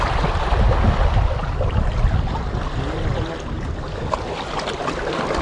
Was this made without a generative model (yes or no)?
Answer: yes